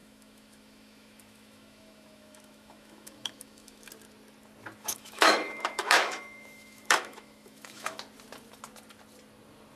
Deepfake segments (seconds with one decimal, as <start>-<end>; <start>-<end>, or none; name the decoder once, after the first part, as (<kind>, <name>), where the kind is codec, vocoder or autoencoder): 0.0-3.9 (autoencoder, DAC-VAE); 4.8-8.0